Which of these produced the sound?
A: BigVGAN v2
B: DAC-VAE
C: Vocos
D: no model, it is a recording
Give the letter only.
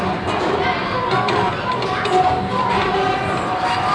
D